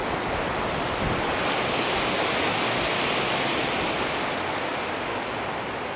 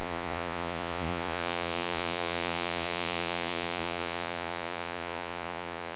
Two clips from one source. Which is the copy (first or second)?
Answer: second